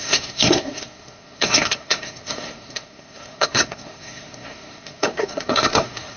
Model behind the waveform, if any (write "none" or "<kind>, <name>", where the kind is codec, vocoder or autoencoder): codec, SNAC